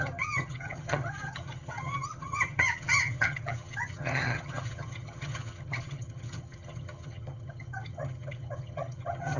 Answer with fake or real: fake